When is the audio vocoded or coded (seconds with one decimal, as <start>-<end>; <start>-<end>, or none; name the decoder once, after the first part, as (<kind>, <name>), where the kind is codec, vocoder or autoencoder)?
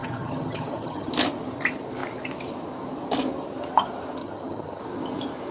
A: 0.0-1.1 (vocoder, HiFi-GAN); 4.2-4.8